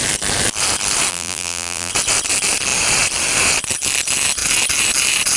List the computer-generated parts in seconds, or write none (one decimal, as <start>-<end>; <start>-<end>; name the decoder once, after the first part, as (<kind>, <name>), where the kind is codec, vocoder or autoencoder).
1.1-1.9 (vocoder, BigVGAN v2)